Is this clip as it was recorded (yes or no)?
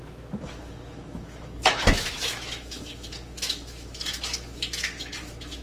no